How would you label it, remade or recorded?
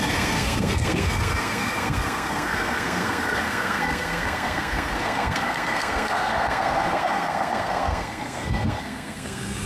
remade